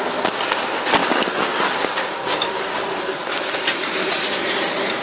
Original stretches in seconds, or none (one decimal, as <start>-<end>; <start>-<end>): 0.0-1.0; 1.6-2.2; 2.8-5.0